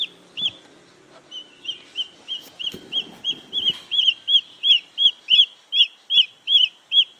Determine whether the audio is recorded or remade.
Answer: remade